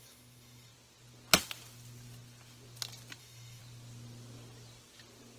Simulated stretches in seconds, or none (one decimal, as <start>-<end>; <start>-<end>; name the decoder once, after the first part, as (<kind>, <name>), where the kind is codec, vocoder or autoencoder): 0.0-0.7 (autoencoder, DAC-VAE); 3.2-3.6